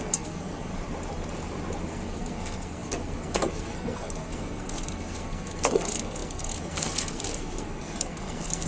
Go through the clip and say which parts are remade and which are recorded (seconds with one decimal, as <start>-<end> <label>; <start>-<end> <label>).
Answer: 0.0-0.7 remade; 0.7-1.8 recorded; 1.8-8.7 remade